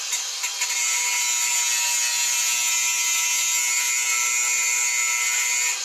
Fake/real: real